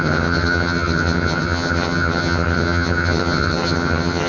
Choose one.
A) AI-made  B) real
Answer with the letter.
A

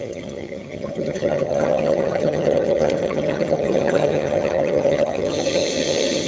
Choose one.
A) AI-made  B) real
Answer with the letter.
A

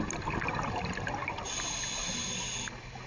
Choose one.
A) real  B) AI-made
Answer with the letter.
A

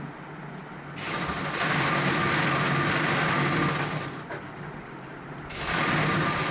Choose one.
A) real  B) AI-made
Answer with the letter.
A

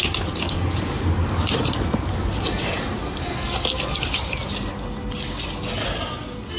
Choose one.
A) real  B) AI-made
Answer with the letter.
A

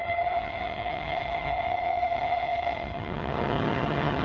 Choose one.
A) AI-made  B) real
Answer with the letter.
A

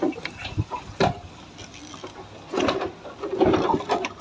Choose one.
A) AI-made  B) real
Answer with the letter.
B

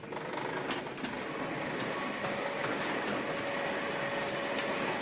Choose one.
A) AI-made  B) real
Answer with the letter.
B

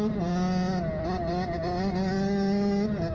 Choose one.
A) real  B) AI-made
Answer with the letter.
A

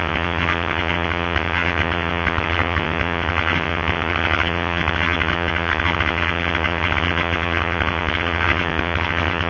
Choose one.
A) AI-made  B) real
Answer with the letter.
A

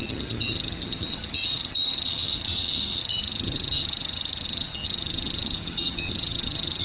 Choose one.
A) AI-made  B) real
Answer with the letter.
A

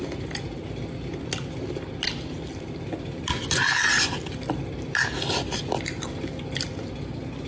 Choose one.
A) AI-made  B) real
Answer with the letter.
B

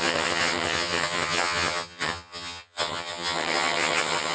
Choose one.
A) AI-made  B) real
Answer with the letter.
A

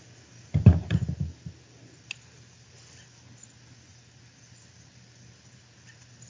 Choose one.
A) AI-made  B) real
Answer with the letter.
B